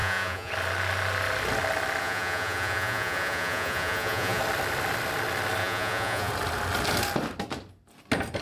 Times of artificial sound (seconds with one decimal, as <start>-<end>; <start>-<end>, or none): 0.0-0.5; 2.0-4.4; 5.6-6.3